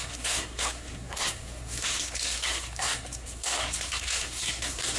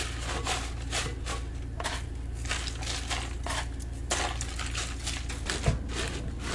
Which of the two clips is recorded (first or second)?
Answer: second